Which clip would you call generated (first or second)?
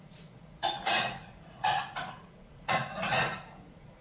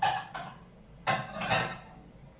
first